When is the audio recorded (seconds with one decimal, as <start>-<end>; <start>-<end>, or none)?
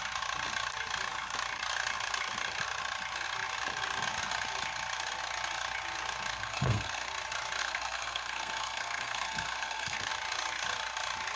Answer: 0.0-6.3; 7.1-7.6; 10.1-11.4